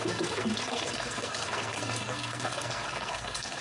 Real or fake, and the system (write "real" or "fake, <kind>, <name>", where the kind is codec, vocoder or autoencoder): fake, codec, SNAC